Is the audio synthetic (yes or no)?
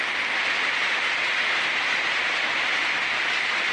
no